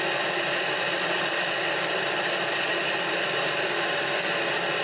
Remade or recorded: recorded